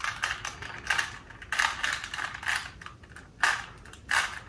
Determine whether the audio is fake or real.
real